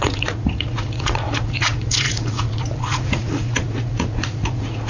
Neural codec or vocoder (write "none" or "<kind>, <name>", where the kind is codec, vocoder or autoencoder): vocoder, Vocos